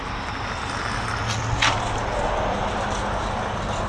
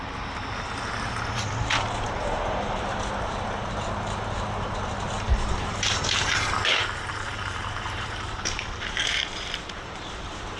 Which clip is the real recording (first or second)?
first